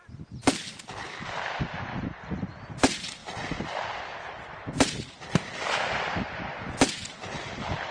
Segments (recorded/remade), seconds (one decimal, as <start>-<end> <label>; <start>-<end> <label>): 0.0-7.9 recorded